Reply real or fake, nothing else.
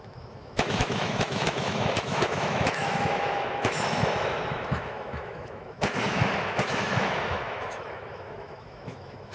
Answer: fake